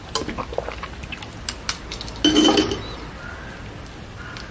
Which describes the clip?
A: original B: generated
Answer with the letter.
A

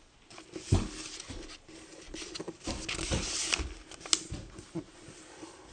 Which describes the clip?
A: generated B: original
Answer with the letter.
B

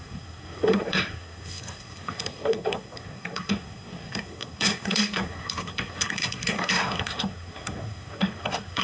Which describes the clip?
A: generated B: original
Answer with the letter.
A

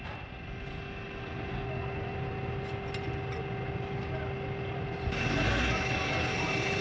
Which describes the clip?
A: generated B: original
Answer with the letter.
B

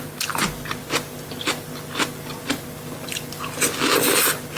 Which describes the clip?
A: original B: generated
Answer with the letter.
A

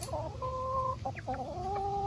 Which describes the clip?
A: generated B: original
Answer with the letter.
B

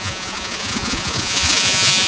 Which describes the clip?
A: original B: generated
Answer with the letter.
B